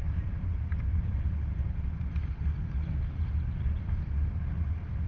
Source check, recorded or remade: recorded